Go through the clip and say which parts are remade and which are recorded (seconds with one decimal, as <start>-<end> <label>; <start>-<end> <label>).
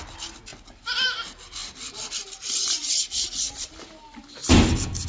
0.0-0.5 recorded; 0.5-1.1 remade; 1.1-1.6 recorded; 1.6-3.7 remade; 3.7-5.1 recorded